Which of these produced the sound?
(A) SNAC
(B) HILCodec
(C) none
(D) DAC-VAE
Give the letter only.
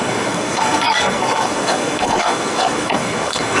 A